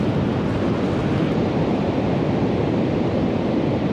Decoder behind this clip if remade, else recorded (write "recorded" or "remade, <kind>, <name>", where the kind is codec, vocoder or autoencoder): recorded